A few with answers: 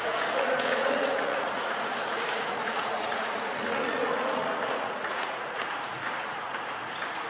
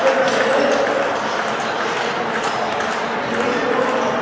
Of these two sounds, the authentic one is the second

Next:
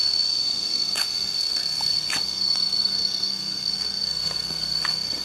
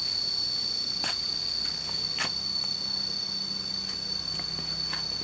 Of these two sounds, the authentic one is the second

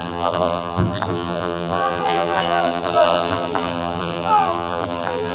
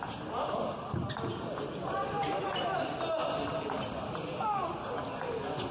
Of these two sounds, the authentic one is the second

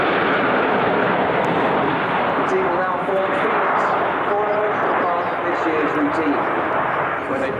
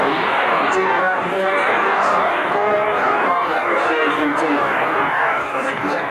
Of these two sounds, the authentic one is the first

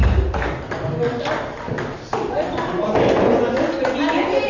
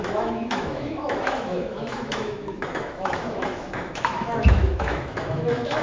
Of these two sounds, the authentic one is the first